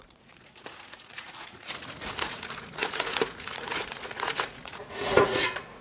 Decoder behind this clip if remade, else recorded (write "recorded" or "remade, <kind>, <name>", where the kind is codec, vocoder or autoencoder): remade, vocoder, Vocos